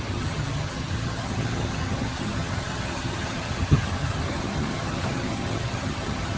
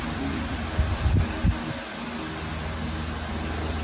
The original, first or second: second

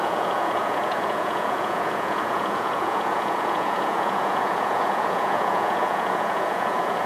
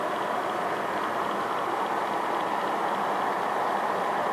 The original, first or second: second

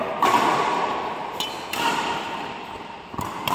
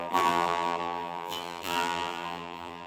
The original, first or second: first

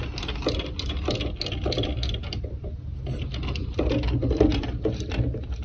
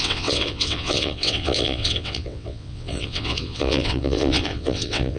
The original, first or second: first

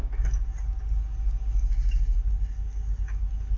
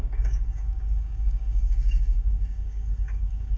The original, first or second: first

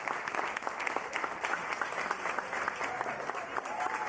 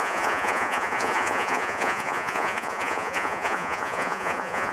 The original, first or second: first